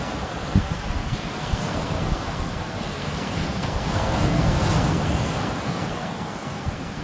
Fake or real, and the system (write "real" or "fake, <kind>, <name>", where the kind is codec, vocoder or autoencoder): fake, codec, SNAC